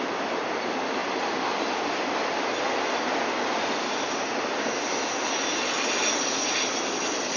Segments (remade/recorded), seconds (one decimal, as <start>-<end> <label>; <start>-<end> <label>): 0.0-7.4 recorded